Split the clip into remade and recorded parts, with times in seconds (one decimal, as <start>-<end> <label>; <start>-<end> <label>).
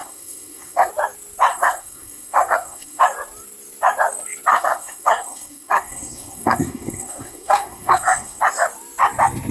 0.0-0.9 remade; 0.9-1.5 recorded; 1.5-3.0 remade; 3.0-4.5 recorded; 4.5-8.4 remade; 8.4-9.5 recorded